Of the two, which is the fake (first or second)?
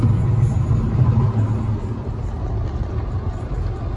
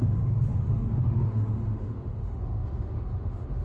second